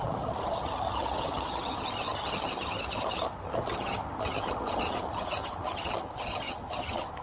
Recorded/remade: remade